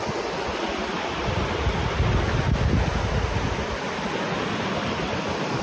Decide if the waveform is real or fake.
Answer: real